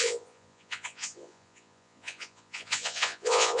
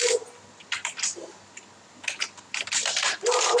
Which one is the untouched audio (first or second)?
second